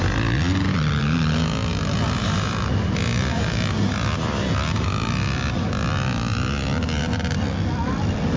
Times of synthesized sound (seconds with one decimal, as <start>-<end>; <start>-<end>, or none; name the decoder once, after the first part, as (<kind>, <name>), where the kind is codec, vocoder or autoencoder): none